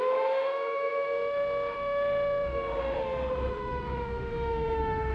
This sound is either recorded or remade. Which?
remade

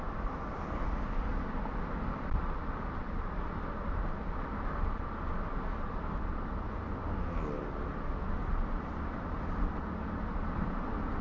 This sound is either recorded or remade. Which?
recorded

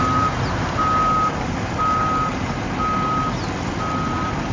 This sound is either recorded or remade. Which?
recorded